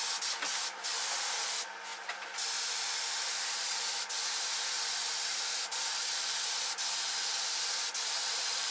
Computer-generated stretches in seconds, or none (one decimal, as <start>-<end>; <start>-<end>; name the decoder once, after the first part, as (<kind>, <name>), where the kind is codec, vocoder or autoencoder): 0.0-8.7 (vocoder, BigVGAN v2)